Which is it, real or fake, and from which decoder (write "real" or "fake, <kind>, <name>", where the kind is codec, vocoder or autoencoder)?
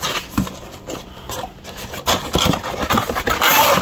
real